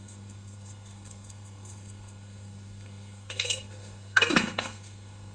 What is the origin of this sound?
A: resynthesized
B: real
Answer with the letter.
A